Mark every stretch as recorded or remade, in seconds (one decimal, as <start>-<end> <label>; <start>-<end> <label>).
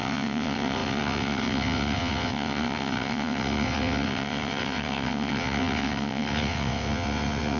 0.0-7.6 remade